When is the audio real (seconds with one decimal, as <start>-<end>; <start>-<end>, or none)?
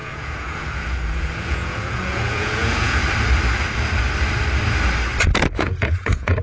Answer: 3.0-5.5